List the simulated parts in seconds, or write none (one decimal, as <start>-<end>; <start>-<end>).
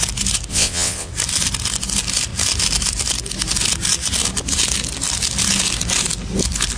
0.5-1.1